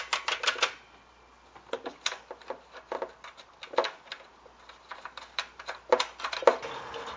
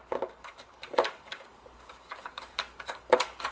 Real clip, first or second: first